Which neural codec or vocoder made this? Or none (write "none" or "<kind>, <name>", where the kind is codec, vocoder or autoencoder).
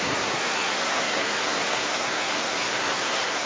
codec, SNAC